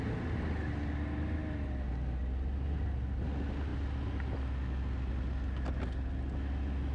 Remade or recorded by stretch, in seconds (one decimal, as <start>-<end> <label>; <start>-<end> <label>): 0.0-6.9 recorded